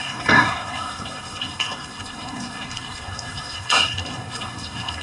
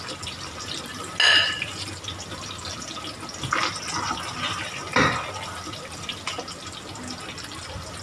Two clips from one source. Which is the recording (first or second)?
second